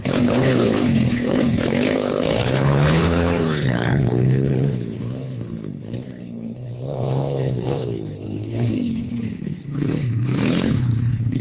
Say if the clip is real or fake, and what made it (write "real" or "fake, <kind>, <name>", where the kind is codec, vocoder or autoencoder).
fake, codec, HILCodec